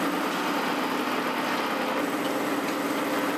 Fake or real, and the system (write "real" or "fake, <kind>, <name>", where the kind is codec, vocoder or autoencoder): real